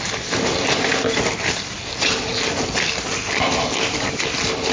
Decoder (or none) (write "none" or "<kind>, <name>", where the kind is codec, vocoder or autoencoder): none